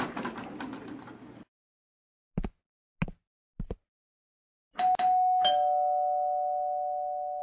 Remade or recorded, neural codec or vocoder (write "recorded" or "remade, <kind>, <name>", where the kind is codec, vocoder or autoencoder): recorded